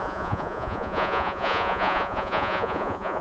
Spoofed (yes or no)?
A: yes